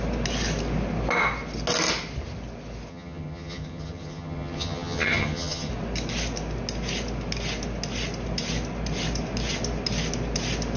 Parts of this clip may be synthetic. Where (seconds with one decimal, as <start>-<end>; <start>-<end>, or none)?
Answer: 2.9-5.7